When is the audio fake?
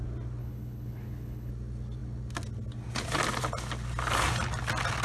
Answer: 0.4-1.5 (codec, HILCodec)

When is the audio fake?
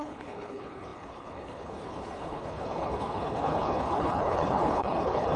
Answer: 0.0-5.4 (codec, HILCodec)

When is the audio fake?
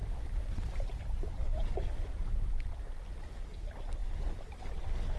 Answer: none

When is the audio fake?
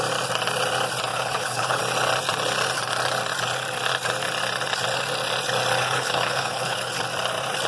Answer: 1.1-1.8 (codec, HILCodec); 5.8-6.9